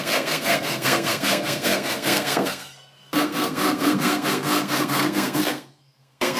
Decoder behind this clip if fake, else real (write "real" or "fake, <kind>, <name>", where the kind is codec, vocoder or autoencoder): fake, codec, SNAC